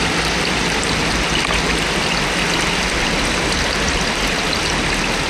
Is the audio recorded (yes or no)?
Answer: yes